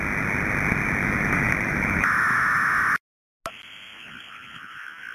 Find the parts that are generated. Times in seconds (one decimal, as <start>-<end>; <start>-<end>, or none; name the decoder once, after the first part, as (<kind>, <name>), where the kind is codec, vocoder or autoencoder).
1.0-3.0 (autoencoder, DAC-VAE)